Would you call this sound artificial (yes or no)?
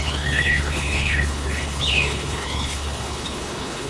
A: yes